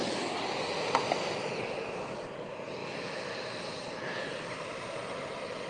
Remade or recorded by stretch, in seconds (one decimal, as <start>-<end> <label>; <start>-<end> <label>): 0.0-5.7 recorded